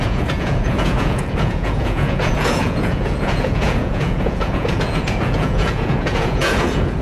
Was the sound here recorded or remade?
remade